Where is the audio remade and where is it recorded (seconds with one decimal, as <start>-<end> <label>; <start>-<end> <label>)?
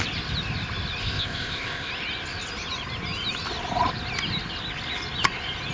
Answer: 0.0-1.0 recorded; 1.0-1.9 remade; 1.9-5.7 recorded